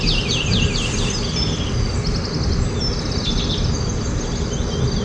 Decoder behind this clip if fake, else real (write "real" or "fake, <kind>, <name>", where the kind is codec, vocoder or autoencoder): real